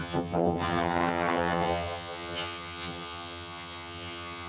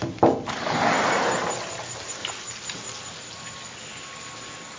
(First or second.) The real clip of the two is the second